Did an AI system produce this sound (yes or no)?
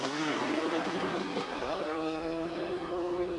yes